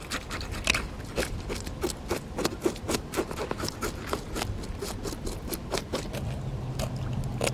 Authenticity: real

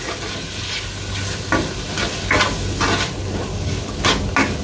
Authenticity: real